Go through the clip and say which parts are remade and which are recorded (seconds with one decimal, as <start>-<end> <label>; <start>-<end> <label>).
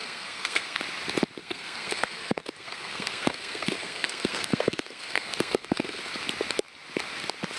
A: 0.0-0.8 remade; 0.8-1.4 recorded; 1.4-6.0 remade; 6.0-7.6 recorded